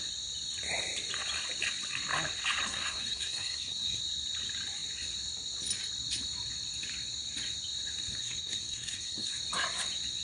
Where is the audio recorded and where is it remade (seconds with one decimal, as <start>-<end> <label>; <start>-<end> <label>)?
0.0-2.7 recorded; 2.7-4.0 remade; 4.0-8.2 recorded; 8.2-9.3 remade; 9.3-10.2 recorded